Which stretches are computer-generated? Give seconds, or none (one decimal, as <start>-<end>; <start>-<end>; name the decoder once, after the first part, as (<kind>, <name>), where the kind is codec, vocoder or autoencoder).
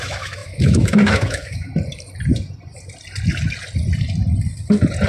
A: 0.0-1.7 (autoencoder, DAC-VAE)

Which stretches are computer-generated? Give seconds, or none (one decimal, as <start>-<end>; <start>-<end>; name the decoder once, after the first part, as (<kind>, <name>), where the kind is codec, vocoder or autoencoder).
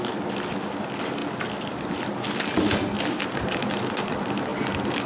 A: none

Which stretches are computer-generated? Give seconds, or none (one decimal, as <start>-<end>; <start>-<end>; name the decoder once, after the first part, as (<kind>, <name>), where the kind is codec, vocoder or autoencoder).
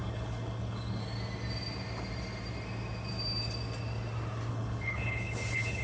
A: 0.0-1.0 (codec, HILCodec); 4.5-5.8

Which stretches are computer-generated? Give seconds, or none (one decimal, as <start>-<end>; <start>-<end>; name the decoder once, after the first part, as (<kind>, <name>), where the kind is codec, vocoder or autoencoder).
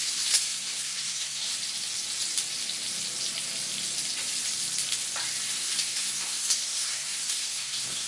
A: 0.0-1.5 (codec, SNAC); 5.5-8.1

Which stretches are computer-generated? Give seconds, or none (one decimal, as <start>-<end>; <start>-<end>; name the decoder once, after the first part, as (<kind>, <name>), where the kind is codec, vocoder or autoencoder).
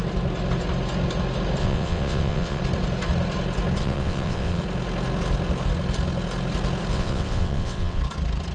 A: 1.6-2.6 (vocoder, WaveNeXt); 3.8-4.6; 6.9-8.0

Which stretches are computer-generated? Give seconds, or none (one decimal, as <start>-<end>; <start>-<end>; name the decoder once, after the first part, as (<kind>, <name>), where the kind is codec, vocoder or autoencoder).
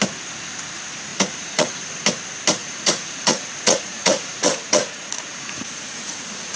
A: 1.1-1.8 (vocoder, Vocos); 2.6-6.6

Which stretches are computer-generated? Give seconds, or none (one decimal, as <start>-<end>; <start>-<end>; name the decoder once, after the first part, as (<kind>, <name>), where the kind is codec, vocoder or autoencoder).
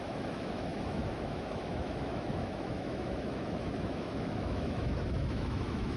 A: 0.0-6.0 (autoencoder, DAC-VAE)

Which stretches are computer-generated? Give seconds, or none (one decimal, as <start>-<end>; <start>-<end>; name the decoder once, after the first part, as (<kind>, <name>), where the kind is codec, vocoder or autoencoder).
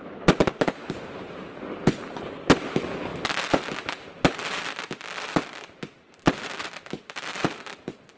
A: none